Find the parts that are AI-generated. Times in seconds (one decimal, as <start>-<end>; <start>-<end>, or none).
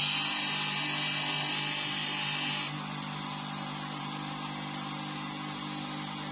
none